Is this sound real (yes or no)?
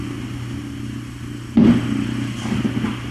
yes